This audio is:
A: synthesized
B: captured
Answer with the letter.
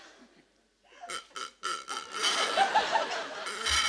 B